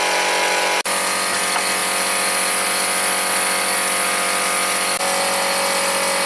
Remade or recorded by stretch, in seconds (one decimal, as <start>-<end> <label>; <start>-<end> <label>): 0.0-6.3 recorded